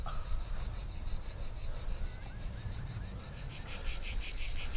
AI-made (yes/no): no